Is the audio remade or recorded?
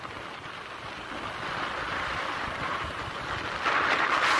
recorded